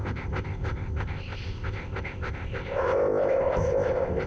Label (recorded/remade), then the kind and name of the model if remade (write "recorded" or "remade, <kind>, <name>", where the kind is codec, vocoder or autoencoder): remade, codec, ZipCodec